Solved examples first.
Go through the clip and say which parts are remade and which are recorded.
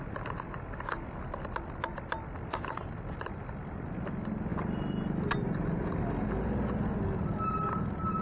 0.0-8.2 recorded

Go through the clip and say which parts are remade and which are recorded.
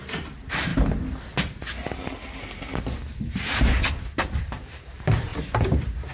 0.0-0.7 remade; 0.7-4.4 recorded; 4.4-5.3 remade; 5.3-6.1 recorded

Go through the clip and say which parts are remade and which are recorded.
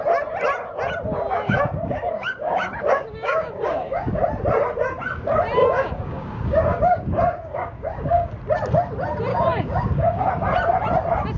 0.0-1.3 recorded; 1.3-4.2 remade; 4.2-5.6 recorded; 5.6-8.3 remade; 8.3-9.3 recorded; 9.3-10.3 remade; 10.3-11.4 recorded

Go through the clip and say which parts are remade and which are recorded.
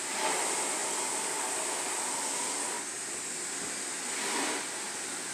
0.0-0.8 recorded; 0.8-2.9 remade; 2.9-5.3 recorded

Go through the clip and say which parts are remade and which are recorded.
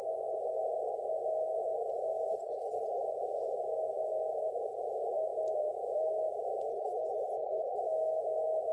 0.0-2.4 recorded; 2.4-3.0 remade; 3.0-6.7 recorded; 6.7-7.8 remade; 7.8-8.7 recorded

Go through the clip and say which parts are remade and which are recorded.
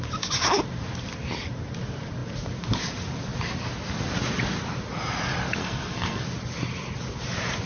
0.0-5.6 recorded; 5.6-6.2 remade; 6.2-7.7 recorded